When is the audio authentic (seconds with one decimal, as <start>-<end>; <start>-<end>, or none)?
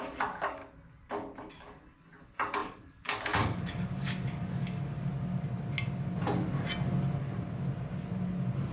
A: 0.6-1.5; 5.1-8.7